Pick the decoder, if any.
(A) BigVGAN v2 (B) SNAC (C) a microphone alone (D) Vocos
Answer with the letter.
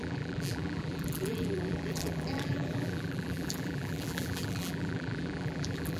A